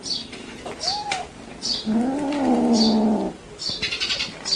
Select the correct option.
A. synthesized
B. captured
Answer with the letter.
B